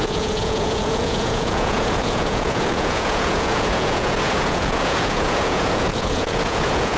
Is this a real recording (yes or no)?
no